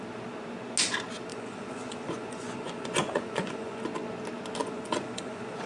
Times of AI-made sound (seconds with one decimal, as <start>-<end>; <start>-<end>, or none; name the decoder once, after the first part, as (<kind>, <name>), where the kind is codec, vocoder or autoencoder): 1.3-3.8 (vocoder, Vocos); 4.6-5.7